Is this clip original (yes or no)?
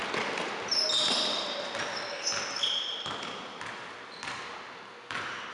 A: yes